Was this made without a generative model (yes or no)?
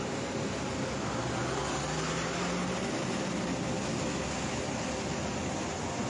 yes